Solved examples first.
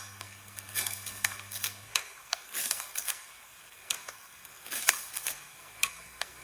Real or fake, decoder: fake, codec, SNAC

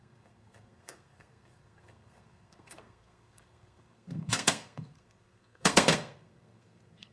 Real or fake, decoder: fake, codec, SNAC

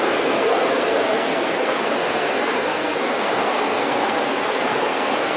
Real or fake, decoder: fake, codec, SNAC